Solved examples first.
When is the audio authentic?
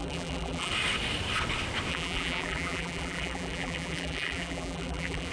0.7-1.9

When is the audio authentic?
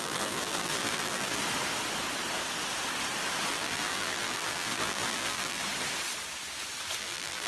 1.4-3.5; 5.6-7.0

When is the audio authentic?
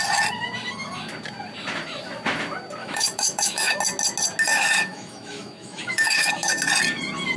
0.0-2.8; 3.8-4.5; 6.5-7.4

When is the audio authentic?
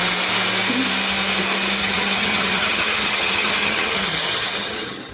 0.0-1.8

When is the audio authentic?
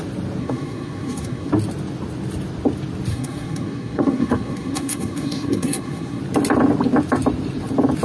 0.0-0.4; 1.5-3.1; 6.2-8.0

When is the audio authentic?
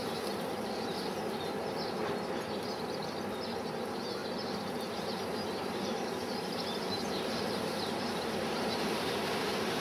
1.7-4.2; 4.8-5.6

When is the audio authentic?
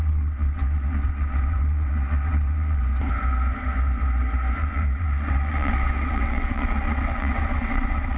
2.8-4.6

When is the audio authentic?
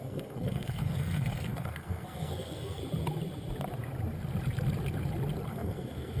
2.8-5.5